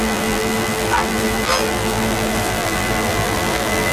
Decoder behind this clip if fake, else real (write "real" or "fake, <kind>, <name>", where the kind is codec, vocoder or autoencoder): fake, vocoder, BigVGAN v2